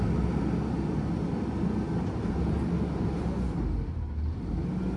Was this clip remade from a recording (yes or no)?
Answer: no